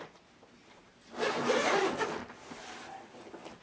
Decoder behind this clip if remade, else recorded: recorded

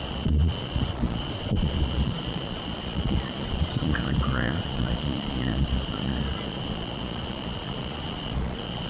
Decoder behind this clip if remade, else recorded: remade, vocoder, Vocos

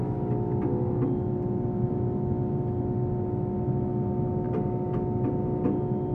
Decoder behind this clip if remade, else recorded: recorded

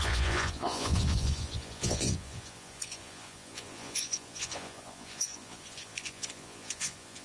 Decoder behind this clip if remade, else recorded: remade, vocoder, Vocos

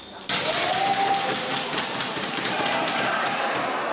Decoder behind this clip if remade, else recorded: recorded